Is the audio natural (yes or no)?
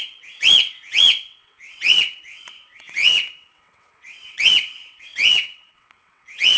no